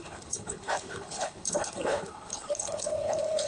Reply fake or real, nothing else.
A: fake